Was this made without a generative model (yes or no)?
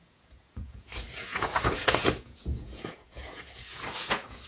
no